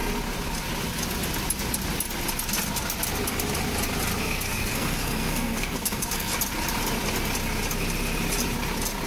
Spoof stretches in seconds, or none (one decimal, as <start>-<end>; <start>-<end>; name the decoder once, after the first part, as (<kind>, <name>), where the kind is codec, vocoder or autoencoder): 4.2-6.3 (codec, SNAC)